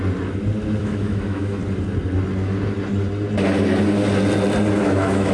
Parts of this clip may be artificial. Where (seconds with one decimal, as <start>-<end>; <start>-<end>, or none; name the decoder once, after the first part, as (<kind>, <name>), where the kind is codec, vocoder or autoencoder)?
0.8-1.6 (autoencoder, DAC-VAE); 4.8-5.3